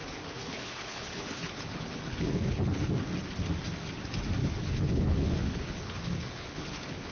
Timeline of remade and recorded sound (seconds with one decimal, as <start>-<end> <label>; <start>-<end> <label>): 0.0-2.9 remade; 2.9-4.4 recorded; 4.4-7.1 remade